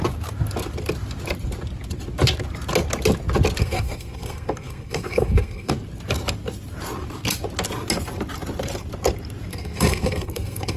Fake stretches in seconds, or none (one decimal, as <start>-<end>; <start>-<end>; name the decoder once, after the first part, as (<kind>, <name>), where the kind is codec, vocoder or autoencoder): 3.6-5.7 (codec, SNAC); 9.5-10.8